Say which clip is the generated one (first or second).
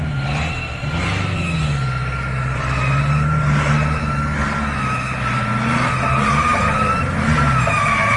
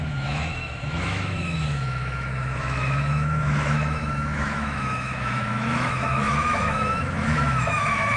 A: second